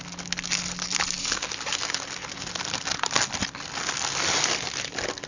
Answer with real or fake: real